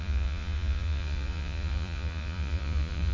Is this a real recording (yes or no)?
no